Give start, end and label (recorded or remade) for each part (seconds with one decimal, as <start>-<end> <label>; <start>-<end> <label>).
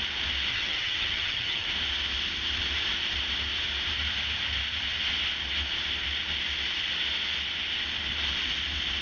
0.0-0.5 recorded; 0.5-1.7 remade; 1.7-9.0 recorded